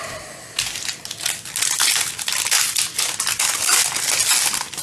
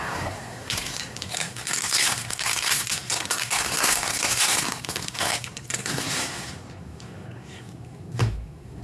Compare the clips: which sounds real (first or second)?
first